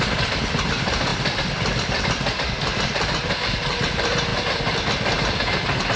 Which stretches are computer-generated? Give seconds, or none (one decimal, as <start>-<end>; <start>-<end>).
0.0-4.3